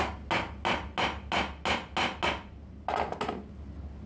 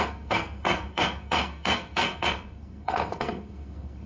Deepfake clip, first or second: second